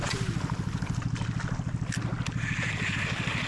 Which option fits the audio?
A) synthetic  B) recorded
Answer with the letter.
B